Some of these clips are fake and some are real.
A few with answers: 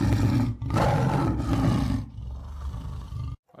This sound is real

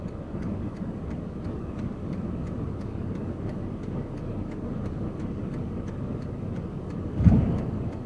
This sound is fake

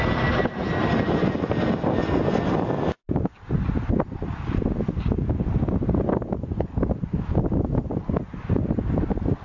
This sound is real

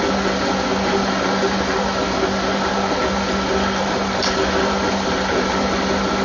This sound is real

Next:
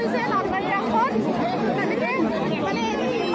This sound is real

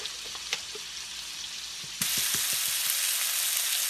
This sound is real